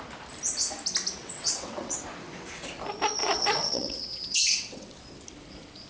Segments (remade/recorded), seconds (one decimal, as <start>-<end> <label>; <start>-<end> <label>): 0.0-1.2 recorded; 1.2-2.0 remade; 2.0-3.2 recorded; 3.2-5.0 remade; 5.0-5.9 recorded